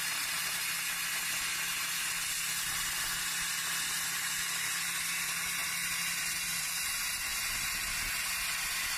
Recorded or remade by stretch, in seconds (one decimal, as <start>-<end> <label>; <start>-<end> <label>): 0.0-9.0 recorded